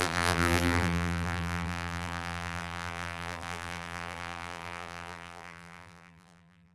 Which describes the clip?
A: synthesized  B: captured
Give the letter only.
A